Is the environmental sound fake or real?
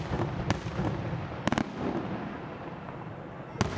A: real